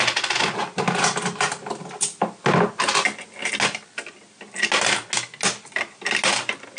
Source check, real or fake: real